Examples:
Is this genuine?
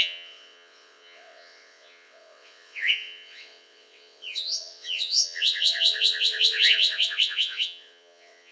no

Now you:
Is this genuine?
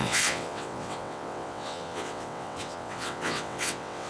no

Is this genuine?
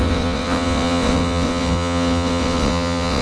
no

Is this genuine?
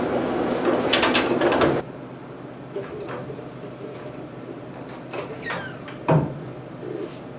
yes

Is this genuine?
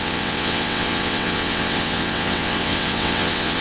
no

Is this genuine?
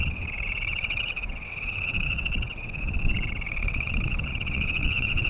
no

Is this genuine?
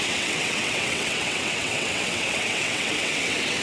no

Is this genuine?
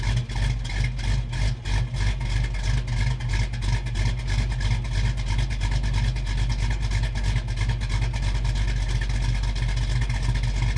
yes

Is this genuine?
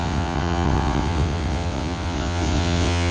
no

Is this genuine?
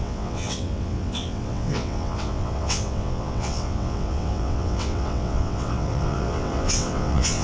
no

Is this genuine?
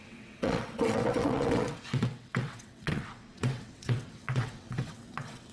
no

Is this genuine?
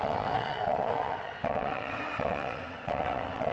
no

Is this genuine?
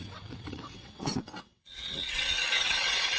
no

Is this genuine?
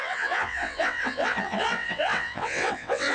no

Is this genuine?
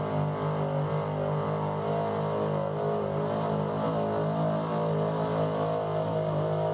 yes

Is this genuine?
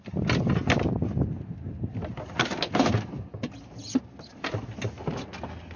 yes